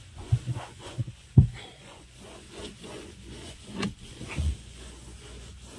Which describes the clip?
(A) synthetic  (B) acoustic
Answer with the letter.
A